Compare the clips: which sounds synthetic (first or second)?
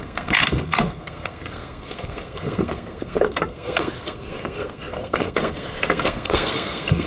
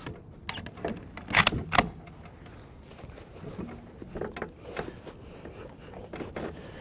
first